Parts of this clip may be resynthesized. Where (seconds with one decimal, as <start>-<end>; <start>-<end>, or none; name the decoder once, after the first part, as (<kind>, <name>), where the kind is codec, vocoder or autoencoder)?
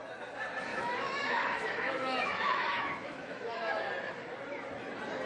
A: 0.7-3.9 (autoencoder, DAC-VAE)